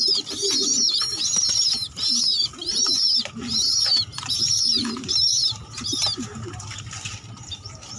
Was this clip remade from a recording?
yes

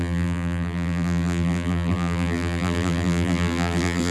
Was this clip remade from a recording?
yes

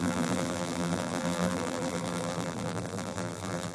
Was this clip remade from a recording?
yes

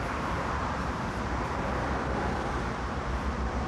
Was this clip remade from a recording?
yes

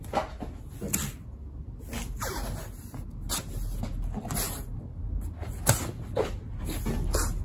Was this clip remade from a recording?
no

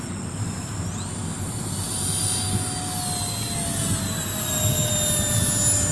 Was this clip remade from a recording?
no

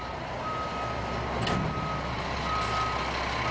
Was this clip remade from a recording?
no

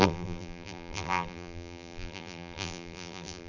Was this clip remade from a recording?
yes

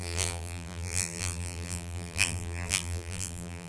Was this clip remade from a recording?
yes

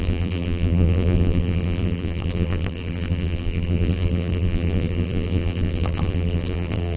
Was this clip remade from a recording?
yes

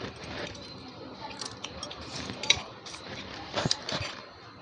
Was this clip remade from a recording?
yes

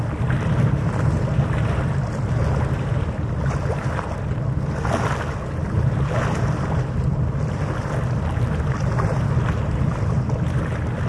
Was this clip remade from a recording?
no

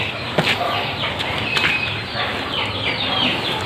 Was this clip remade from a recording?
yes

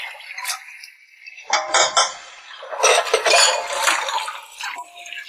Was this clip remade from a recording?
no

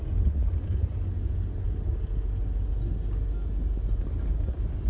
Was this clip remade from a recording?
no